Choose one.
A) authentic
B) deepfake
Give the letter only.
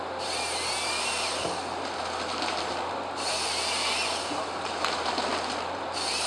A